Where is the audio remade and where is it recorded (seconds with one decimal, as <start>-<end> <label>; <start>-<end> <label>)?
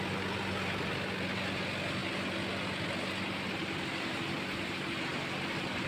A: 0.0-5.9 recorded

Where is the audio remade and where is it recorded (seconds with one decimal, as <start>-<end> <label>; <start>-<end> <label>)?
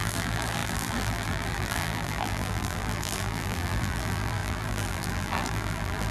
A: 0.0-6.1 remade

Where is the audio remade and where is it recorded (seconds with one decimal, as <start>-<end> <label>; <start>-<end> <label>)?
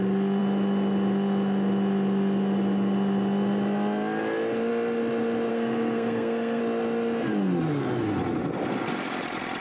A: 0.0-5.5 recorded; 5.5-6.6 remade; 6.6-9.6 recorded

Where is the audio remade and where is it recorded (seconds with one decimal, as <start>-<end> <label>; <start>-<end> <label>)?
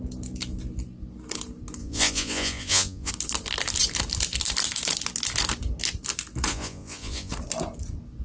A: 0.0-1.8 recorded; 1.8-3.1 remade; 3.1-6.5 recorded; 6.5-7.3 remade; 7.3-8.2 recorded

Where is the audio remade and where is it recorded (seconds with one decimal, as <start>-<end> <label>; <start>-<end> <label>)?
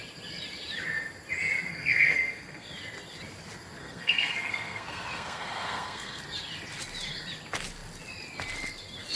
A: 0.0-1.7 recorded; 1.7-2.7 remade; 2.7-3.8 recorded; 3.8-6.2 remade; 6.2-9.1 recorded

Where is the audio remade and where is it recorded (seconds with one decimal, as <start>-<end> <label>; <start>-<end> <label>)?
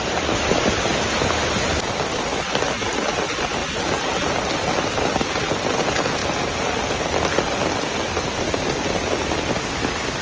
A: 0.0-10.2 recorded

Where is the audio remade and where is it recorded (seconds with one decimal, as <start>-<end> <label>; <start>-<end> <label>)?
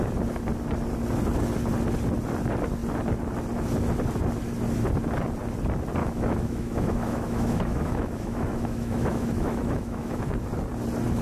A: 0.0-6.0 recorded; 6.0-10.2 remade; 10.2-11.2 recorded